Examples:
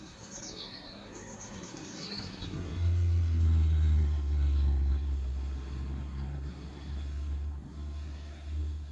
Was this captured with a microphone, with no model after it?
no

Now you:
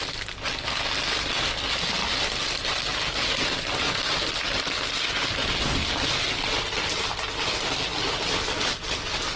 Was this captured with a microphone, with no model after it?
yes